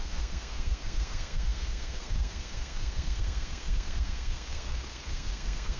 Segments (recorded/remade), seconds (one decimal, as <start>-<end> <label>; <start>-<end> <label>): 0.0-5.8 remade